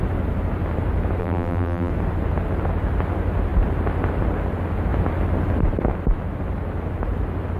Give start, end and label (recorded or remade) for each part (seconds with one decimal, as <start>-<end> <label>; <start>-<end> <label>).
0.0-1.2 recorded; 1.2-1.9 remade; 1.9-7.6 recorded

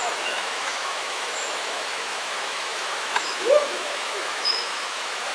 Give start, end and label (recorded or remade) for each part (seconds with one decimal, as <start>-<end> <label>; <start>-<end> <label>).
0.0-5.3 remade